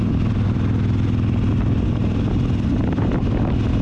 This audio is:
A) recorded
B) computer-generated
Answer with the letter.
A